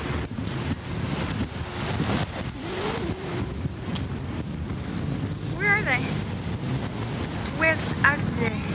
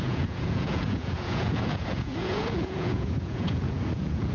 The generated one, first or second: second